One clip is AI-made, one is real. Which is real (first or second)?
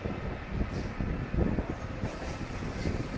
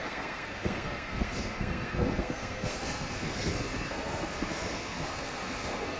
first